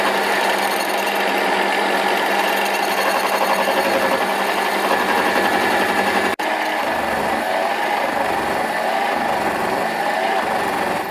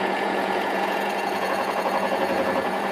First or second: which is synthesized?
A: second